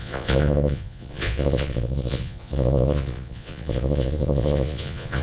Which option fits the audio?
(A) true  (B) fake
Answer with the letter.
B